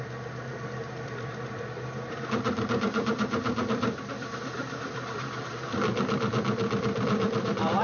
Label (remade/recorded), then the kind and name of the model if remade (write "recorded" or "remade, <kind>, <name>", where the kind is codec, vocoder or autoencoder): remade, vocoder, BigVGAN v2